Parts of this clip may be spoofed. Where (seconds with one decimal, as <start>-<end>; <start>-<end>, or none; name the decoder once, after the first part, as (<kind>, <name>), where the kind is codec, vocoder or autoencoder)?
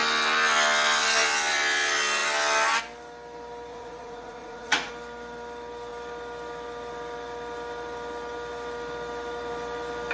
3.7-4.9 (vocoder, Vocos)